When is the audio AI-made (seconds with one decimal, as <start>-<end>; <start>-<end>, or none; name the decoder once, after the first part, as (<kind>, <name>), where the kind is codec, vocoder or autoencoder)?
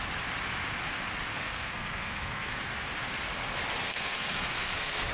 1.3-2.6 (codec, SNAC); 3.8-5.1